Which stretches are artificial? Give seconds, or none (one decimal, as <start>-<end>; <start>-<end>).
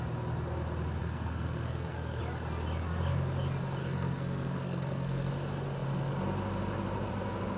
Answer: 1.0-2.2; 3.8-5.3